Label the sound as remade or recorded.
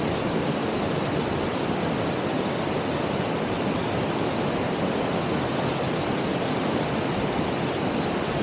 recorded